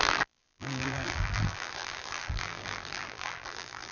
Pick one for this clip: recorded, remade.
remade